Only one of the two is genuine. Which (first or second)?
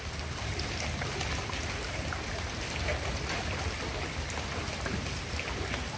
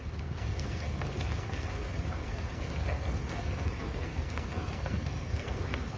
first